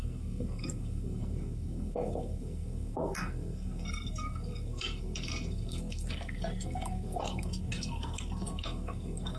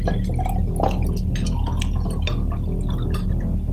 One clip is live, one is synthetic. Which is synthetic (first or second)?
first